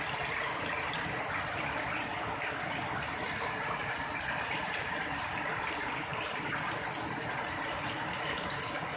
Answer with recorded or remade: recorded